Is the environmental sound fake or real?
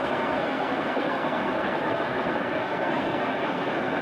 fake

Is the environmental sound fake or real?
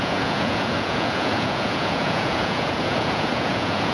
fake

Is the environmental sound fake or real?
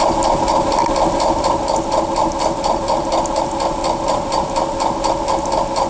real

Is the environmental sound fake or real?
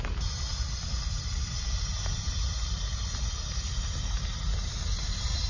real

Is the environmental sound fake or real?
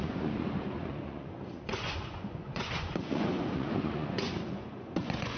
fake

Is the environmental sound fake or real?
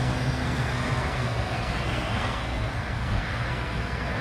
fake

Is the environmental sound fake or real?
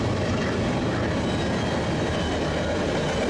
real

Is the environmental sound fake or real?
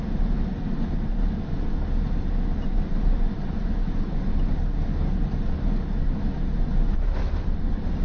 real